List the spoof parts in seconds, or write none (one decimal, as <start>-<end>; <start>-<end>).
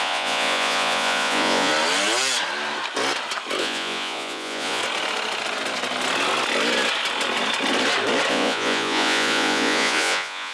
0.0-1.7; 3.6-4.8; 8.3-10.5